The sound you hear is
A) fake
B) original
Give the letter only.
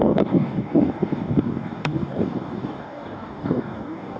A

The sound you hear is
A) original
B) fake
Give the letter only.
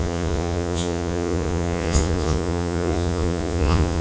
B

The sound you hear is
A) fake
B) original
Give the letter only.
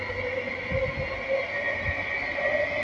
B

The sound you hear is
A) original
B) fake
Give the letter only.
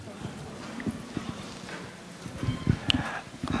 A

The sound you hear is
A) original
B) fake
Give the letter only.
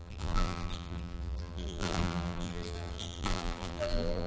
B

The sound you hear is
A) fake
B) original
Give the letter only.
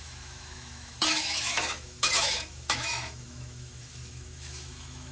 A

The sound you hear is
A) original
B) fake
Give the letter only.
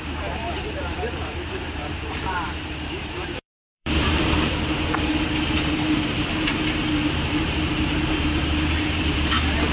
B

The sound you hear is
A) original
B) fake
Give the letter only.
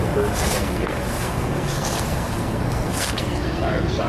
B